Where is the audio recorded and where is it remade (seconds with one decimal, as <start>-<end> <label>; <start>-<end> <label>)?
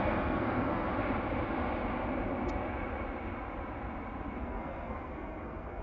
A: 0.0-0.9 remade; 0.9-4.4 recorded; 4.4-5.8 remade